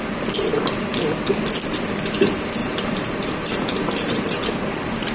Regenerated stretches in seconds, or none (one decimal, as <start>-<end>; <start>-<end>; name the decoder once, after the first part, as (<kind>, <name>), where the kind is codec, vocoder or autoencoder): 2.6-4.3 (vocoder, BigVGAN v2)